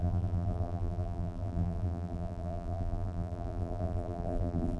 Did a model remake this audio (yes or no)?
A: yes